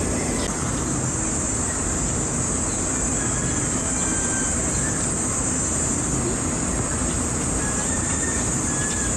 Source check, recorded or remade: recorded